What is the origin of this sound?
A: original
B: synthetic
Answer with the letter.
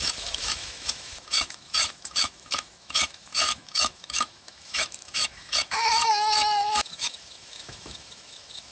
B